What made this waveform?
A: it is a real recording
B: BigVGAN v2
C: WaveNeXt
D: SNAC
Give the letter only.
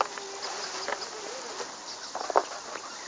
A